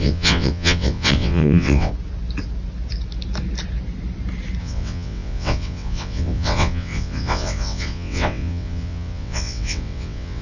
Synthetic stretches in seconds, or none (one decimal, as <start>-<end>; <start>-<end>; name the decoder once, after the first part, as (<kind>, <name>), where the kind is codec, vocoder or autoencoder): 0.0-1.9 (vocoder, WaveNeXt); 4.6-10.4